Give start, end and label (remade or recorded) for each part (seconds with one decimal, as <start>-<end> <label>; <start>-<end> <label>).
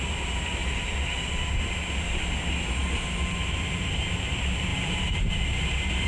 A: 0.0-0.6 recorded; 0.6-1.2 remade; 1.2-2.8 recorded; 2.8-3.3 remade; 3.3-4.7 recorded; 4.7-5.2 remade; 5.2-6.1 recorded